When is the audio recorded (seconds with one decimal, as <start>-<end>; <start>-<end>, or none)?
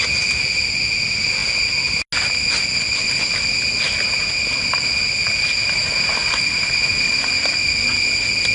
0.0-8.5